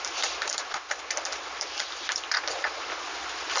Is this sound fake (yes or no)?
no